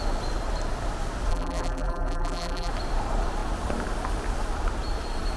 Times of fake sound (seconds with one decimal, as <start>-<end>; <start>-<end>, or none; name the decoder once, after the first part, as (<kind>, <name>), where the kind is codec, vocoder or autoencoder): 1.3-2.7 (vocoder, BigVGAN v2)